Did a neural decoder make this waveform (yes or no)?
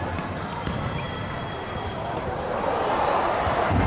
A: yes